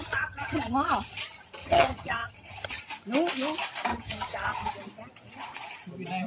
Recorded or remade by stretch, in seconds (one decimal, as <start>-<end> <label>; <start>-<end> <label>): 0.0-1.2 remade; 1.2-1.6 recorded; 1.6-2.8 remade; 2.8-3.9 recorded; 3.9-4.7 remade; 4.7-6.3 recorded